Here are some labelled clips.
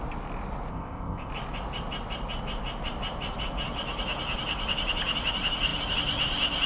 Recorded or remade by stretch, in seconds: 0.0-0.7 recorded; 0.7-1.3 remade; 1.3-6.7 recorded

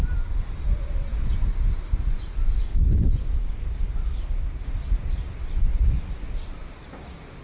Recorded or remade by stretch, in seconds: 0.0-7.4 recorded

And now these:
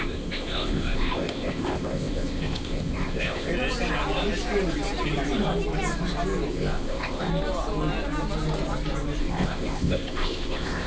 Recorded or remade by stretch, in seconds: 0.0-3.5 remade; 3.5-6.5 recorded; 6.5-7.3 remade; 7.3-9.2 recorded; 9.2-10.9 remade